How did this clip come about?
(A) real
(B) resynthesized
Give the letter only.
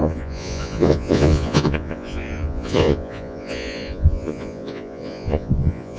B